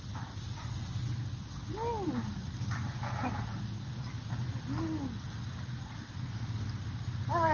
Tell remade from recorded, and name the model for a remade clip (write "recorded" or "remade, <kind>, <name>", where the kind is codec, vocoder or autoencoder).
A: recorded